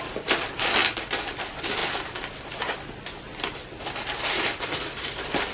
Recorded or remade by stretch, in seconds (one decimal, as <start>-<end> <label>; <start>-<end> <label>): 0.0-0.8 remade; 0.8-1.3 recorded; 1.3-3.6 remade; 3.6-4.1 recorded; 4.1-5.5 remade